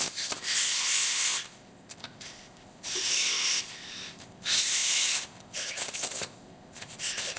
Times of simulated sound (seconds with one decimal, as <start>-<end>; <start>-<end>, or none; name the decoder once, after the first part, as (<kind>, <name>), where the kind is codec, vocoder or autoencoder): 0.0-7.4 (codec, ZipCodec)